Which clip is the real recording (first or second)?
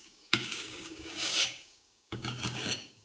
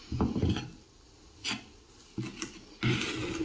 second